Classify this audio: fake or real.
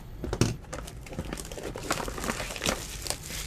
real